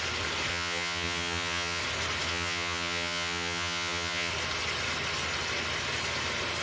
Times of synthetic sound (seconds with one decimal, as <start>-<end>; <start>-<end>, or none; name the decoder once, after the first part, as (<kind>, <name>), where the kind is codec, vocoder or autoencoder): 0.5-1.8 (vocoder, HiFi-GAN); 2.3-4.3